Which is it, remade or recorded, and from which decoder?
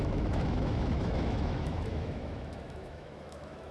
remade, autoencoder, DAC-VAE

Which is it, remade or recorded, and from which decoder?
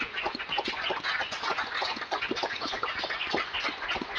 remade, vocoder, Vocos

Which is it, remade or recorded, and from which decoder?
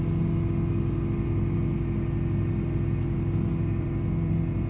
recorded